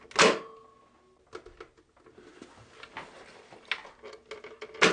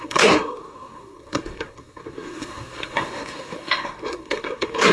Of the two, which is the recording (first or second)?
first